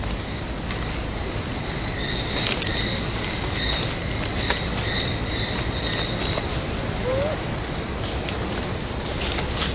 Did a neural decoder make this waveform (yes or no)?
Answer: no